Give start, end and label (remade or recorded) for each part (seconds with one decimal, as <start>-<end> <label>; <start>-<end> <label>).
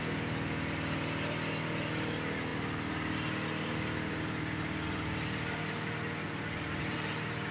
0.0-7.5 recorded